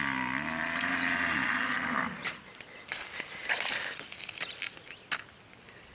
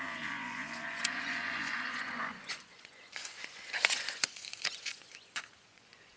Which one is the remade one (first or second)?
second